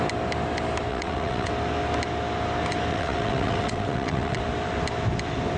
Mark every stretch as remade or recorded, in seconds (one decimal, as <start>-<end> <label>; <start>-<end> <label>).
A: 0.0-0.9 recorded; 0.9-1.5 remade; 1.5-2.9 recorded; 2.9-4.4 remade; 4.4-5.6 recorded

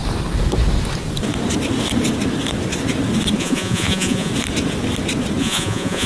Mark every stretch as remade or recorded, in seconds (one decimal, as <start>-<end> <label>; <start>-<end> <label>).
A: 0.0-3.4 recorded; 3.4-4.3 remade; 4.3-5.4 recorded; 5.4-6.1 remade

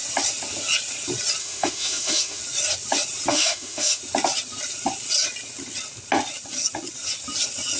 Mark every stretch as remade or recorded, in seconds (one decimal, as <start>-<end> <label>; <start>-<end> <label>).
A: 0.0-1.4 recorded; 1.4-2.4 remade; 2.4-3.3 recorded; 3.3-4.0 remade; 4.0-7.8 recorded

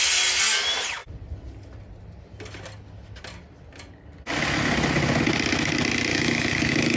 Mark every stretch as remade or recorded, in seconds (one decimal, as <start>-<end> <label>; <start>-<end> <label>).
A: 0.0-6.1 recorded; 6.1-7.0 remade

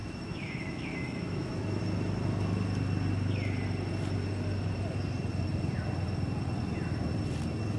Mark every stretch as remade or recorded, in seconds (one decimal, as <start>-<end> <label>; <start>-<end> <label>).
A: 0.0-1.8 remade; 1.8-7.8 recorded

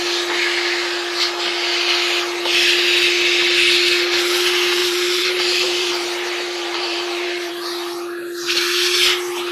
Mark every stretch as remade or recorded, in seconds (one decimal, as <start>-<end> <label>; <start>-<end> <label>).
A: 0.0-4.8 recorded; 4.8-7.5 remade; 7.5-9.5 recorded